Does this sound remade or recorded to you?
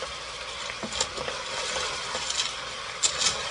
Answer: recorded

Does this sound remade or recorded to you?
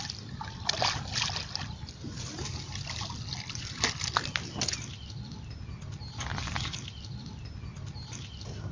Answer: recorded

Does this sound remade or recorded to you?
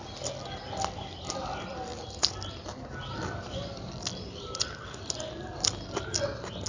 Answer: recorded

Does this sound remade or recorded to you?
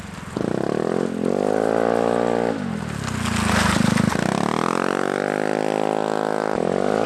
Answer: recorded